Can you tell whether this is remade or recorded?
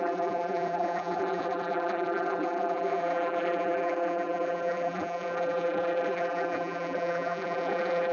remade